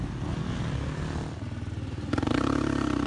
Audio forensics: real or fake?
real